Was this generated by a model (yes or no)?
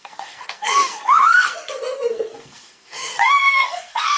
yes